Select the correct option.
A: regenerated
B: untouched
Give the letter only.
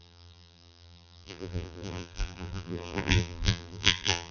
A